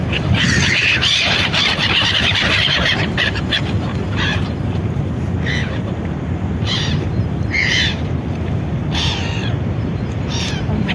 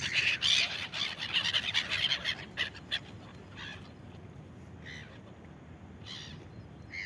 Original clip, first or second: second